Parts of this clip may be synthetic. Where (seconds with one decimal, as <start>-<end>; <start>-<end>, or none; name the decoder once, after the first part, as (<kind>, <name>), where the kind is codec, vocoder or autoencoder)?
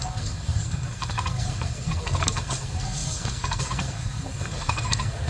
0.0-5.3 (codec, SNAC)